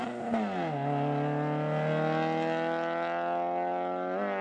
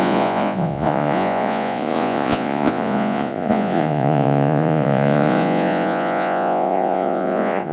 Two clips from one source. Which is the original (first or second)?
first